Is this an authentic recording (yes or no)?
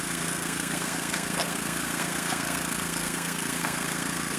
no